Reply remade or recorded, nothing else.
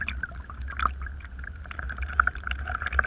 recorded